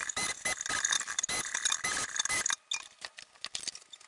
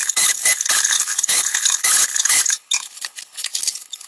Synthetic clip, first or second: second